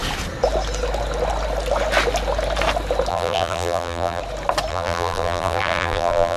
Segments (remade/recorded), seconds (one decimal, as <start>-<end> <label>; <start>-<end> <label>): 0.0-3.1 recorded; 3.1-4.2 remade; 4.2-4.7 recorded; 4.7-6.4 remade